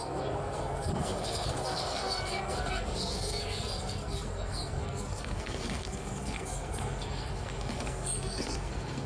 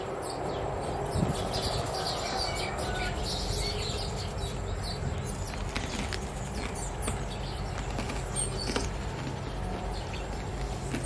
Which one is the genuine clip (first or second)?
second